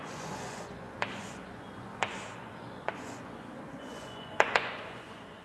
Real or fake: fake